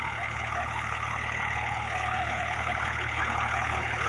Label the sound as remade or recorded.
remade